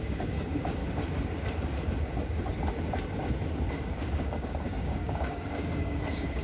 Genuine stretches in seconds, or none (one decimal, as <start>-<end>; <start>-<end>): 0.8-3.7